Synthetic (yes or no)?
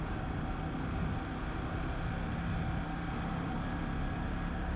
no